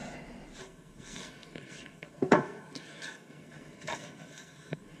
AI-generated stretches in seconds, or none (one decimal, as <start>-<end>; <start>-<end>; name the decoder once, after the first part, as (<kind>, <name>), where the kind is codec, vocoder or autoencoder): 0.6-5.0 (codec, SNAC)